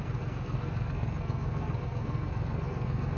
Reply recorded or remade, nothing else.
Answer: remade